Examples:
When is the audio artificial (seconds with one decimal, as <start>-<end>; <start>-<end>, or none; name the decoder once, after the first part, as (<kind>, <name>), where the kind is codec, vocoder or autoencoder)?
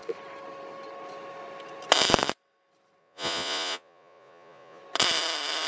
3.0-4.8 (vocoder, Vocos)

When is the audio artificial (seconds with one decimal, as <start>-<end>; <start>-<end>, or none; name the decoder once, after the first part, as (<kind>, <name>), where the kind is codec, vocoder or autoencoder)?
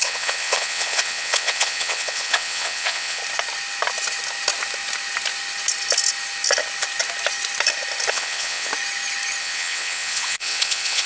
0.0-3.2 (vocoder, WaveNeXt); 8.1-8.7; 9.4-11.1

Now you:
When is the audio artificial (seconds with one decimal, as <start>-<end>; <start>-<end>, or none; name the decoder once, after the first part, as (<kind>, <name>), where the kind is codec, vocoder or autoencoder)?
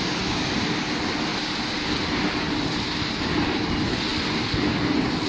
none